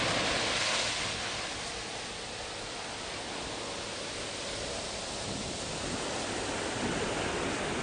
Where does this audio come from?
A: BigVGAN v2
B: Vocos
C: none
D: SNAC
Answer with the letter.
C